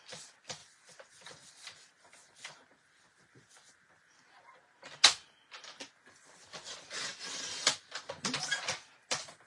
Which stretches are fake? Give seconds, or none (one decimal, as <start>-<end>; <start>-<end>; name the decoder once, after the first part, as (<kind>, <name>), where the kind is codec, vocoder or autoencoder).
0.6-3.7 (vocoder, BigVGAN v2)

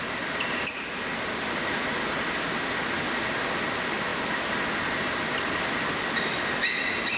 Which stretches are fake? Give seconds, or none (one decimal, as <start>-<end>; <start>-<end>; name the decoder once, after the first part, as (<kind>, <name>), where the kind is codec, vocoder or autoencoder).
none

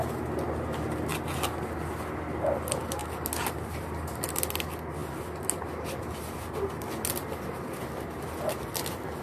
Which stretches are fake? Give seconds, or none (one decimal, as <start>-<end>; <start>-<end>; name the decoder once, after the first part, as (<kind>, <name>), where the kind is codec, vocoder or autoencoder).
none

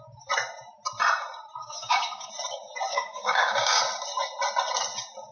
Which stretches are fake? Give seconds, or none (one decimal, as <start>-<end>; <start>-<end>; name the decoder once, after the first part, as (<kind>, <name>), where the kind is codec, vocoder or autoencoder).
1.6-2.3 (codec, DAC); 2.9-3.8

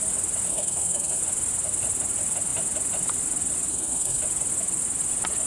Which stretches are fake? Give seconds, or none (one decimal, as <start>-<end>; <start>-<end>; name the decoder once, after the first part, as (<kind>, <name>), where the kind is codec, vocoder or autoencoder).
0.5-1.2 (codec, SNAC); 3.7-4.2